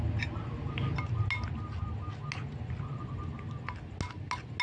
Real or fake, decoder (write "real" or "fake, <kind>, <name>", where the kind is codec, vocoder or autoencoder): real